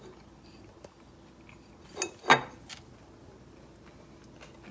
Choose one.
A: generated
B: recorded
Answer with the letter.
B